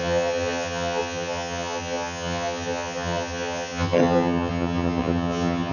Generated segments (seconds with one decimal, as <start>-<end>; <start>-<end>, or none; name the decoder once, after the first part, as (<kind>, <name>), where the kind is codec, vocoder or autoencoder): 0.0-5.7 (vocoder, HiFi-GAN)

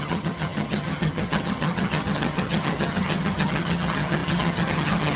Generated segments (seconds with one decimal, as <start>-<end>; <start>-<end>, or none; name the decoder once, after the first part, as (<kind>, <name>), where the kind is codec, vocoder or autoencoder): 0.0-5.2 (vocoder, HiFi-GAN)